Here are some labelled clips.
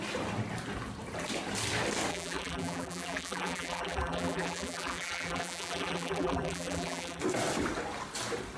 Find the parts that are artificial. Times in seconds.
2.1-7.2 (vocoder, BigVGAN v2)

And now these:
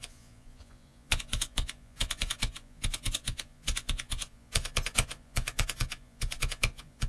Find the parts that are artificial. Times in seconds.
0.0-7.1 (vocoder, Vocos)

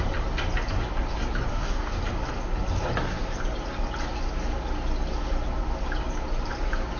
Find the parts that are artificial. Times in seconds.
1.5-2.0 (codec, DAC)

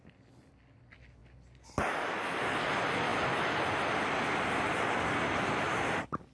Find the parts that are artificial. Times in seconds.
none

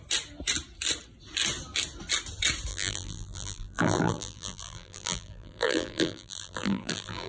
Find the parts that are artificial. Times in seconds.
2.7-7.3 (vocoder, BigVGAN v2)

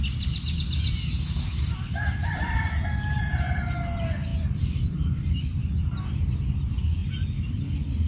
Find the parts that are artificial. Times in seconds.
2.0-2.8 (vocoder, BigVGAN v2); 4.3-5.6; 7.0-7.6

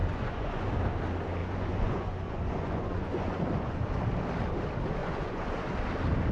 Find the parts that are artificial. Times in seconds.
0.0-0.7 (vocoder, Vocos); 1.4-3.8; 5.0-5.6